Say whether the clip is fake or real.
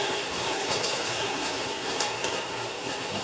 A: fake